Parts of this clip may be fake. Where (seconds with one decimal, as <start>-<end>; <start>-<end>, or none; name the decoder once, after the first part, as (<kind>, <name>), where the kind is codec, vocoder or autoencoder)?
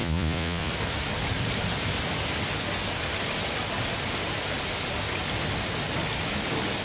0.0-0.7 (vocoder, Vocos)